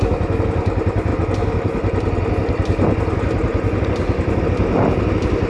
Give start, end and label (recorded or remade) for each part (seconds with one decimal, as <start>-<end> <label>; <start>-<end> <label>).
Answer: 0.0-5.5 recorded